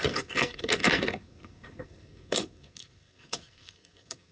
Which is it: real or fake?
fake